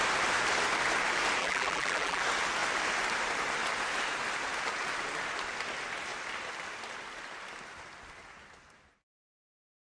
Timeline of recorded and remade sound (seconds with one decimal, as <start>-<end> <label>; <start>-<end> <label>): 0.0-1.4 recorded; 1.4-2.2 remade; 2.2-9.8 recorded